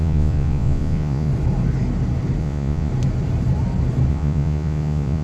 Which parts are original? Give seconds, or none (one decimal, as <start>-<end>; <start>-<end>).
1.3-2.4; 2.9-4.1